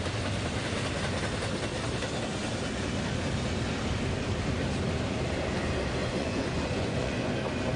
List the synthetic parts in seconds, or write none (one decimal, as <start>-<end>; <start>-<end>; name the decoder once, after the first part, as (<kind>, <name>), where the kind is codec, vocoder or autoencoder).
6.0-7.3 (vocoder, Vocos)